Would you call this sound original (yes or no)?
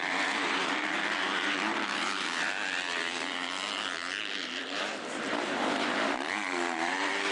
no